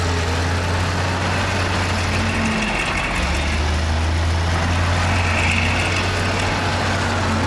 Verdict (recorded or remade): recorded